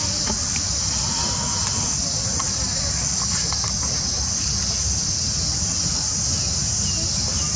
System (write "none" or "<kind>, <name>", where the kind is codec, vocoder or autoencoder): none